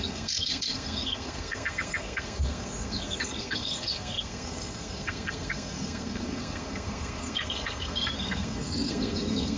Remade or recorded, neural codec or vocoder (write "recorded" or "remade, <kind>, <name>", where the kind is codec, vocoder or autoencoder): remade, codec, SNAC